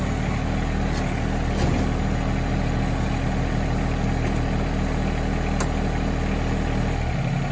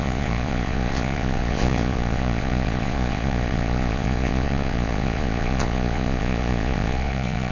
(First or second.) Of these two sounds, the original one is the first